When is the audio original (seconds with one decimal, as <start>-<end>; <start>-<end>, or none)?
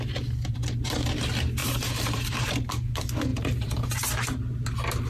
0.0-1.6; 2.5-3.3; 3.8-5.1